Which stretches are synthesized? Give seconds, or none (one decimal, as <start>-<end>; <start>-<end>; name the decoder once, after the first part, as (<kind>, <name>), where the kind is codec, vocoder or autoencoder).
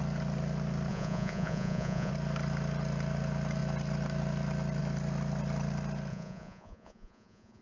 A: 0.9-2.1 (vocoder, Vocos); 6.1-7.6